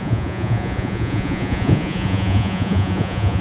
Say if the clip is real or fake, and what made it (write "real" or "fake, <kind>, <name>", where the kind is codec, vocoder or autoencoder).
fake, vocoder, Vocos